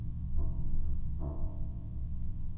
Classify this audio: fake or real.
fake